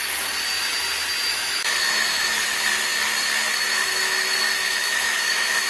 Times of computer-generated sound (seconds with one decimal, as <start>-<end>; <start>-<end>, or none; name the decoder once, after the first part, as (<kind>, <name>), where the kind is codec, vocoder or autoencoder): 1.3-2.7 (autoencoder, DAC-VAE); 3.5-5.7